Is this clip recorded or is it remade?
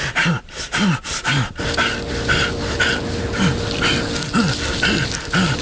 recorded